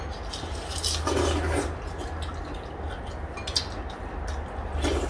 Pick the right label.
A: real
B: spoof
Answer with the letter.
A